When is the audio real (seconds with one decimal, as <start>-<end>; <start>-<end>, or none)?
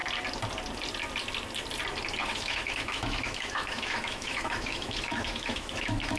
0.0-2.2